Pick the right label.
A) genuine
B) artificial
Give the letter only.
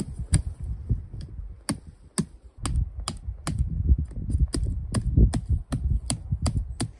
A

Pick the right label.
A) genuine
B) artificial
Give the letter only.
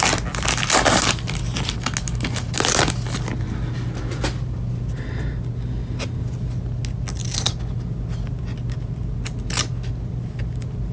A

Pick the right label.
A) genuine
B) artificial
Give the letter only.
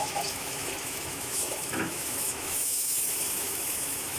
B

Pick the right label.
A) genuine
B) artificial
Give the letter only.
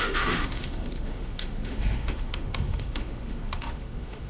B